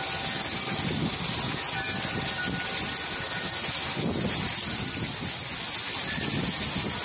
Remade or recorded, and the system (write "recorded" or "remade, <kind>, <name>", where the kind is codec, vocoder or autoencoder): recorded